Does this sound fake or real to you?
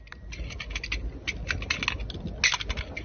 real